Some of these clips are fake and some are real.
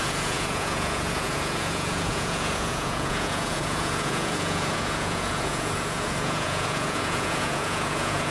fake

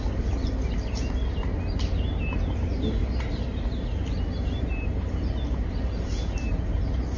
real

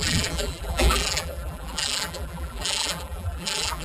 fake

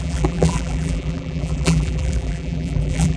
fake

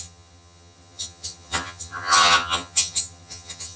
fake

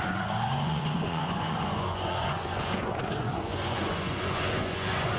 fake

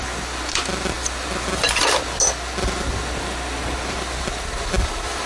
real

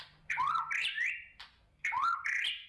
fake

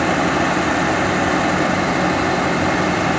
real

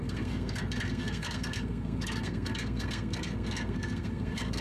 fake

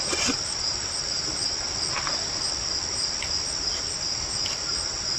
real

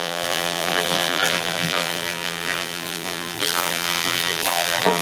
fake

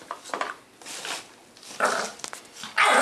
real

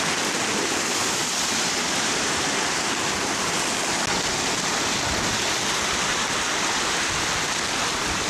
real